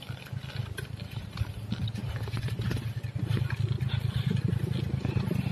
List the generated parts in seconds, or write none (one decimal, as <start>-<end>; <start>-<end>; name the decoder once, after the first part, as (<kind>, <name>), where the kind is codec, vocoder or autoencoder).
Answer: none